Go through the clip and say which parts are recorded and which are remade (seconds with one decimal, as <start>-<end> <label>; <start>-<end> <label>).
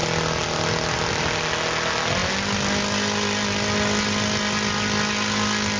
0.0-5.8 recorded